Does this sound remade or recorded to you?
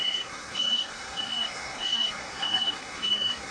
remade